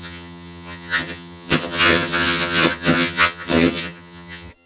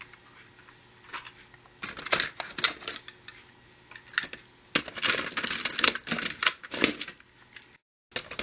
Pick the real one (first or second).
second